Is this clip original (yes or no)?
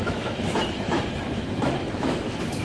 no